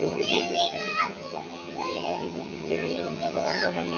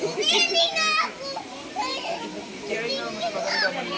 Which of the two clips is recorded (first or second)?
second